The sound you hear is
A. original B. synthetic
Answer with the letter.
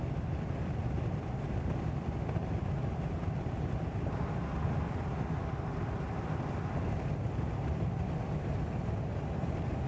A